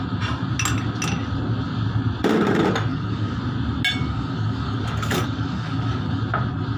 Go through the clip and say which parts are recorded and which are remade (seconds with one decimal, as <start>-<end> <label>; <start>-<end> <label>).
0.0-2.9 recorded; 2.9-3.4 remade; 3.4-4.0 recorded; 4.0-6.2 remade; 6.2-6.8 recorded